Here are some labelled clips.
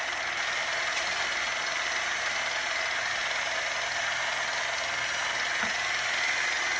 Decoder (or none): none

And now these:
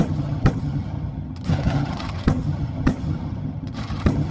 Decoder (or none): vocoder, HiFi-GAN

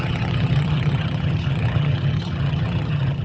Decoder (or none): vocoder, HiFi-GAN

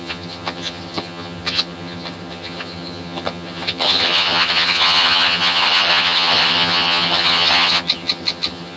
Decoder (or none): vocoder, HiFi-GAN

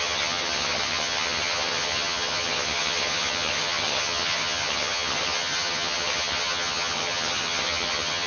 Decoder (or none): vocoder, HiFi-GAN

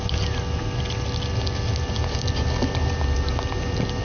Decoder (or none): none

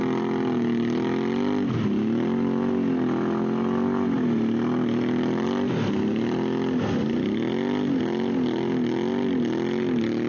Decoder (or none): none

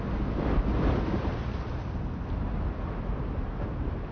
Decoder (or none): none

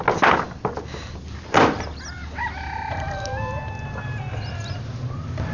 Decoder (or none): none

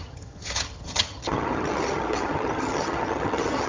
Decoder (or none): vocoder, HiFi-GAN